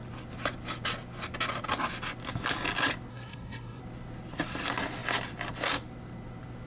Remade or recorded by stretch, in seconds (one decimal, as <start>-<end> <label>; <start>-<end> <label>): 0.0-3.1 recorded; 3.1-3.8 remade; 3.8-6.7 recorded